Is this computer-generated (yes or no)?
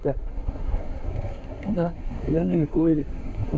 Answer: yes